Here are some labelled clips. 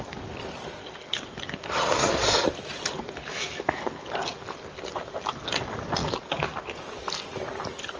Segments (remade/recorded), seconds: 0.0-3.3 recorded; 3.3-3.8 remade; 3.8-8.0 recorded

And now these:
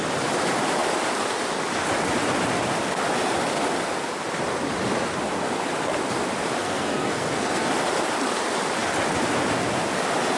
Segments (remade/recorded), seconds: 0.0-6.6 recorded; 6.6-7.7 remade; 7.7-10.4 recorded

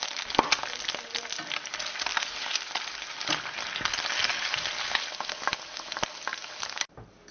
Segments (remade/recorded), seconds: 0.0-7.3 recorded

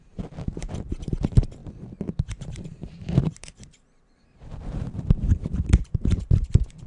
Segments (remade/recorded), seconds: 0.0-6.9 remade

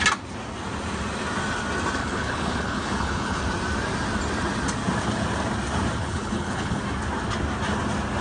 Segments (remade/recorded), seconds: 0.0-2.0 recorded; 2.0-3.4 remade; 3.4-6.0 recorded; 6.0-6.8 remade; 6.8-8.2 recorded

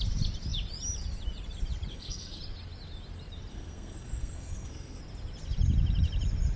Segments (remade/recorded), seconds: 0.0-1.9 recorded; 1.9-2.4 remade; 2.4-3.5 recorded; 3.5-5.0 remade; 5.0-6.6 recorded

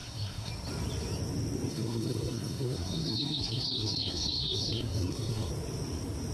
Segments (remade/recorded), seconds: 0.0-0.5 remade; 0.5-1.7 recorded; 1.7-5.5 remade; 5.5-6.3 recorded